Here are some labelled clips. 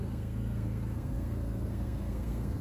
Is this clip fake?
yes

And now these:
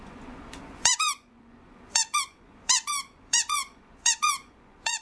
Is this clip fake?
yes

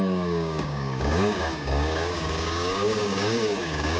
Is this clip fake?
yes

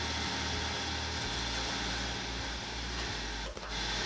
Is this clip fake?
no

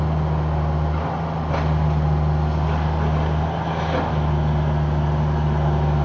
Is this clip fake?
no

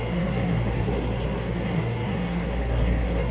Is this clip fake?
yes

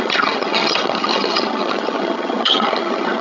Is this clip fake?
yes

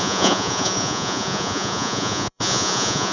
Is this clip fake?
yes